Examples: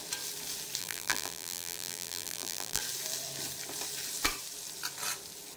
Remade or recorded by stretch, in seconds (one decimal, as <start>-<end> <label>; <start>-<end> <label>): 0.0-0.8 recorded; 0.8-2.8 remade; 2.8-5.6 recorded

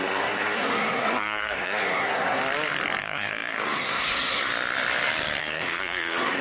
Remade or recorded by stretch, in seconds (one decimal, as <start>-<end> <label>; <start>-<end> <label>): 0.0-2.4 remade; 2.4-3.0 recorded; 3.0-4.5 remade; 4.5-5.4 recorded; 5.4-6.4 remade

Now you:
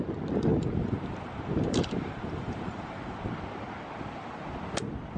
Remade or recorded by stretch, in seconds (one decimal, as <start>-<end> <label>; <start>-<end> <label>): 0.0-0.5 recorded; 0.5-3.3 remade; 3.3-5.2 recorded

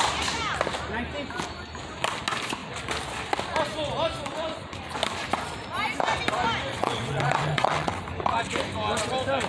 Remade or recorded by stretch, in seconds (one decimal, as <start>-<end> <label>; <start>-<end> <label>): 0.0-6.7 recorded; 6.7-8.0 remade; 8.0-9.5 recorded

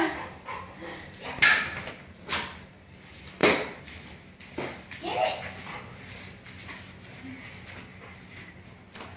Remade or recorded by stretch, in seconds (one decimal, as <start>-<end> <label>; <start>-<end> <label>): 0.0-3.4 recorded; 3.4-4.4 remade; 4.4-7.9 recorded; 7.9-8.5 remade; 8.5-9.2 recorded

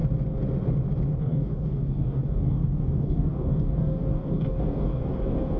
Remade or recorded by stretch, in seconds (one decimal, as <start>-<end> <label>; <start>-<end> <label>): 0.0-1.2 recorded; 1.2-5.6 remade

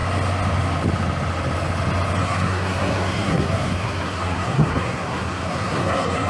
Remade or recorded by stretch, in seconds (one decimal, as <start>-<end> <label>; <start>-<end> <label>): 0.0-2.2 recorded; 2.2-6.3 remade